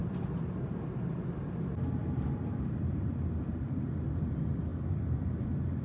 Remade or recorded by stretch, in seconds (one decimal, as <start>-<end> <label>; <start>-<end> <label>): 0.0-1.1 recorded; 1.1-5.8 remade

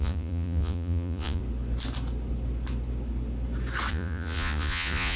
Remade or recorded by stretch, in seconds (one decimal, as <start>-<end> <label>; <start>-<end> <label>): 0.0-1.4 remade; 1.4-3.9 recorded; 3.9-5.2 remade

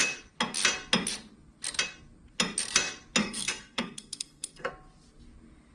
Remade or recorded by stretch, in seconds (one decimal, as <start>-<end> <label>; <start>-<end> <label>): 0.0-3.2 recorded; 3.2-4.7 remade; 4.7-5.7 recorded